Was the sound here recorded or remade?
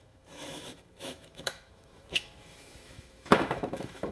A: remade